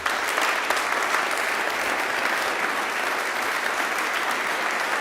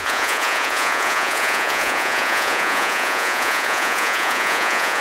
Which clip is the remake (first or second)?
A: second